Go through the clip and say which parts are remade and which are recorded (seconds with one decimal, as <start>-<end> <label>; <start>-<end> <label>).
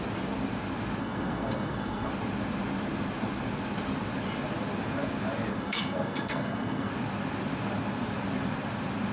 0.0-1.0 recorded; 1.0-2.1 remade; 2.1-5.5 recorded; 5.5-6.9 remade; 6.9-9.1 recorded